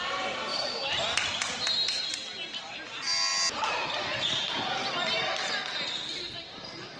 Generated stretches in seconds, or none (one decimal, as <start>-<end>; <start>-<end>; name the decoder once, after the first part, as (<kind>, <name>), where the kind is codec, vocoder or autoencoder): 0.5-1.7 (vocoder, BigVGAN v2)